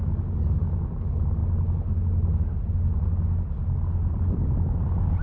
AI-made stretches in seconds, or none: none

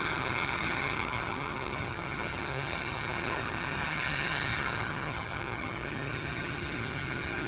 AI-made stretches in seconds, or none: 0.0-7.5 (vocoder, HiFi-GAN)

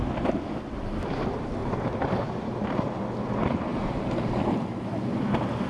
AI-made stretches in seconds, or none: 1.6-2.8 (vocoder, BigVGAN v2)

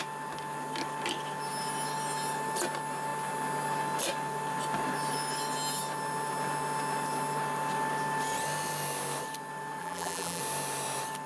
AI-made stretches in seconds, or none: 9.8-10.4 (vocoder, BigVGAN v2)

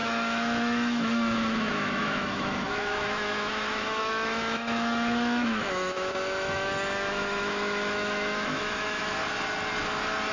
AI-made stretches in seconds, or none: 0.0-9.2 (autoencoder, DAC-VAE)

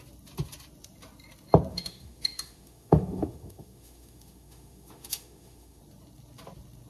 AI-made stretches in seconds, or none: 1.7-5.8 (autoencoder, DAC-VAE)

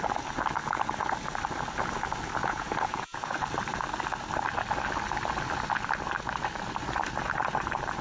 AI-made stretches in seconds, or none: 2.4-3.3 (vocoder, Vocos)